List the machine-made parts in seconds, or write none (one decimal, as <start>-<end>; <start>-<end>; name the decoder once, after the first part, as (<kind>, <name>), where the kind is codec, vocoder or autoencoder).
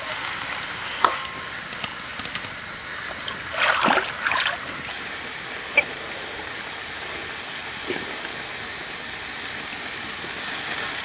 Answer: none